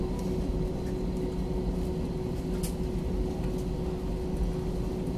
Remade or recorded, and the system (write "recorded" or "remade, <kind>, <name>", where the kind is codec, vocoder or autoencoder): recorded